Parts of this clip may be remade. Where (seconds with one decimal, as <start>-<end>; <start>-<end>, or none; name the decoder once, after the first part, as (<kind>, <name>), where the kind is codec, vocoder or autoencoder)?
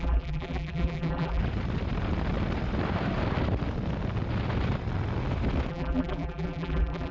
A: 0.0-1.4 (vocoder, BigVGAN v2); 5.7-7.1